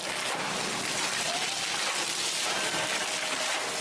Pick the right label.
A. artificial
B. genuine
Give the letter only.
B